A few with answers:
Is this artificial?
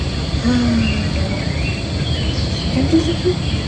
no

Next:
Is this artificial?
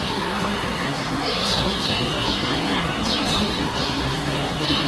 yes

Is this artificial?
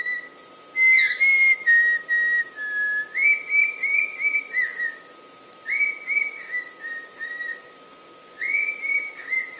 no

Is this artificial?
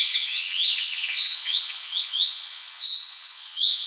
yes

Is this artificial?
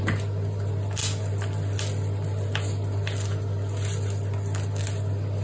no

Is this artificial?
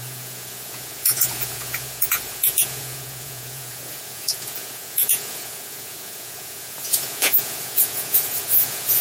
yes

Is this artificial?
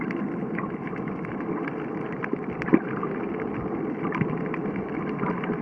no